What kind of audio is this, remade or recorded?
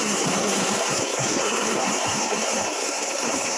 remade